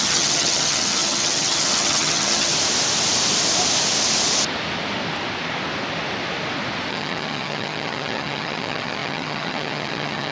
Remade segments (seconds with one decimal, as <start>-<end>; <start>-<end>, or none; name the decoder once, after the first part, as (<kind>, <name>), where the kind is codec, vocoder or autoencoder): 0.0-2.5 (vocoder, HiFi-GAN); 6.9-10.3